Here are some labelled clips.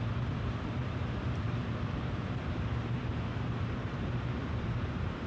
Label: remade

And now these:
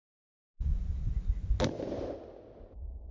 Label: recorded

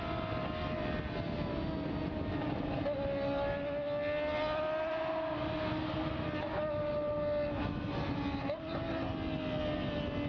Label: recorded